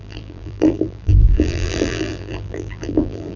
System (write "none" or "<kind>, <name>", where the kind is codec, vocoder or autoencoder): vocoder, BigVGAN v2